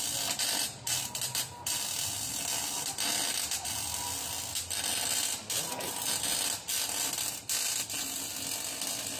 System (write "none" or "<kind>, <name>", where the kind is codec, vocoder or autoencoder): none